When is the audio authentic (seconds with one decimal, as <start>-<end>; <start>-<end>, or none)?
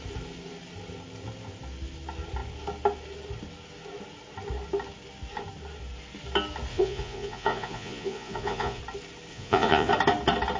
0.0-6.7; 8.8-9.3; 9.9-10.6